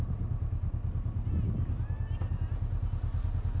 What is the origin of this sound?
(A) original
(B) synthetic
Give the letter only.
A